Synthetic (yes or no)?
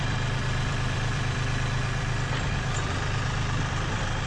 yes